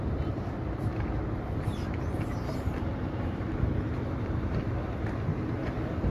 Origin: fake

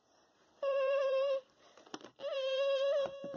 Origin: fake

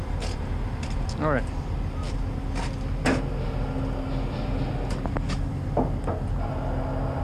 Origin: real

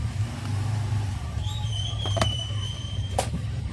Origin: fake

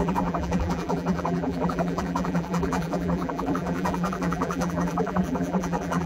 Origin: fake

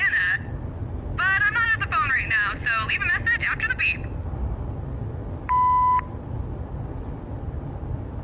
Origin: real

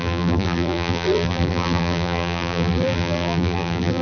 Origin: fake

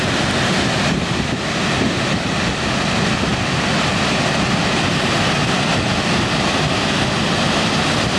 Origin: real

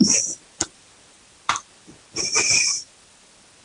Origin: fake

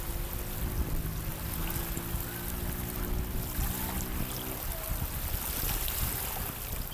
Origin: real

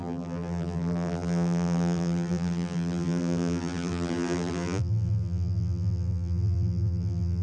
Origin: fake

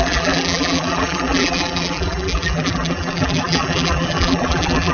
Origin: fake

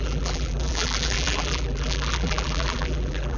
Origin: fake